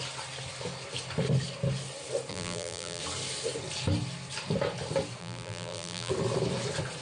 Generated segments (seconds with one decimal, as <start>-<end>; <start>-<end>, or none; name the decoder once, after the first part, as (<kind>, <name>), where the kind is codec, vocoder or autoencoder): 2.3-3.0 (vocoder, BigVGAN v2); 5.2-6.1